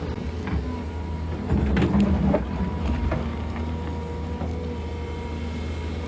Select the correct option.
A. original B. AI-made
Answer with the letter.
A